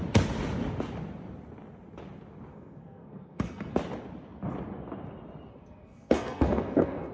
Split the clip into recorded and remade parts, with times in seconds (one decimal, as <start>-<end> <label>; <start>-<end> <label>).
0.0-2.5 recorded; 2.5-3.7 remade; 3.7-5.5 recorded; 5.5-7.1 remade